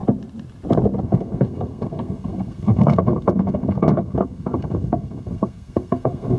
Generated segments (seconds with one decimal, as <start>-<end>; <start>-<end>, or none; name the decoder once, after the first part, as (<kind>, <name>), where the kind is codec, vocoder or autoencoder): 1.0-6.4 (codec, SNAC)